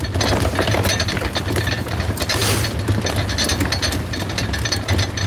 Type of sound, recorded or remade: recorded